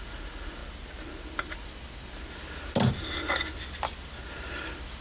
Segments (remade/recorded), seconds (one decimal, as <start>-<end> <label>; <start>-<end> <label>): 0.0-5.0 recorded